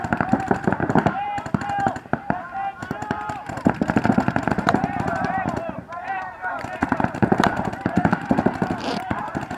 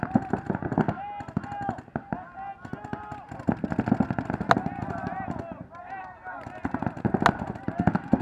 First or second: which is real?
second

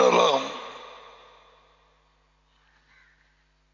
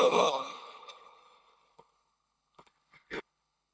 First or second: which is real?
first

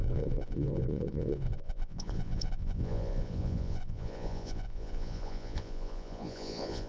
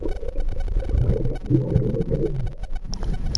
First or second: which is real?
second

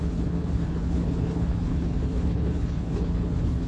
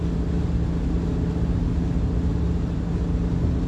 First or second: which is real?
second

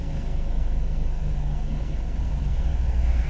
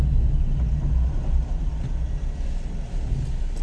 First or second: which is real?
second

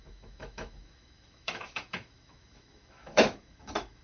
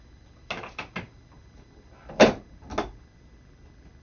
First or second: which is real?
second